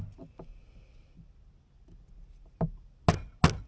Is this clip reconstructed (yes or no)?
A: no